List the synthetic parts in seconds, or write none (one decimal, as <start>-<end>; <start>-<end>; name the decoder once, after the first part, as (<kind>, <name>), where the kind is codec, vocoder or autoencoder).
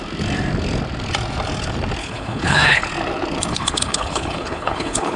2.0-2.8 (codec, HILCodec); 3.5-5.2